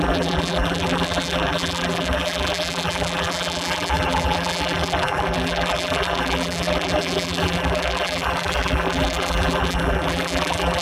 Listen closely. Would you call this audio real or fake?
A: fake